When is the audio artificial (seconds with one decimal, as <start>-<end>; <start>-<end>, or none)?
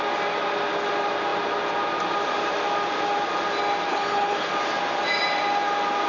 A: 3.9-4.5